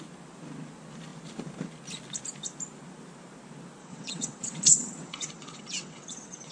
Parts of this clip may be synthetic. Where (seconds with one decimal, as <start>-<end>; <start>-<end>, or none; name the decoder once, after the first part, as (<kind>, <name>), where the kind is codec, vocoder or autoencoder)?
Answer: 3.8-6.5 (vocoder, WaveNeXt)